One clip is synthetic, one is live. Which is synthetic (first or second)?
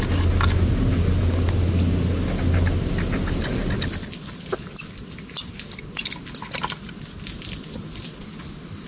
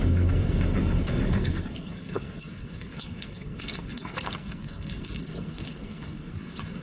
second